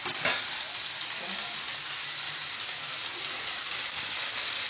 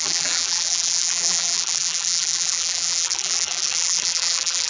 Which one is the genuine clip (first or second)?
first